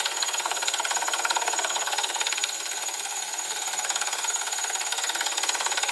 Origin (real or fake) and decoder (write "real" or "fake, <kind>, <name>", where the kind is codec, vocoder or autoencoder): fake, codec, SNAC